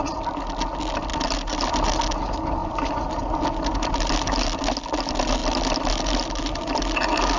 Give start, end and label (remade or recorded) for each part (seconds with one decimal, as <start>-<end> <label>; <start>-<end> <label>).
0.0-7.4 recorded